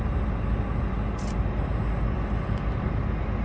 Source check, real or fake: real